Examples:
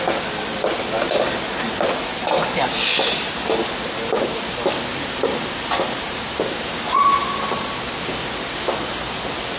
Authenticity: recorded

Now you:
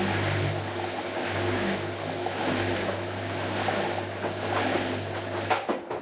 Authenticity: recorded